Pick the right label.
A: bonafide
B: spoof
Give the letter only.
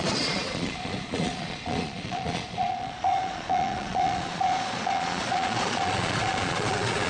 B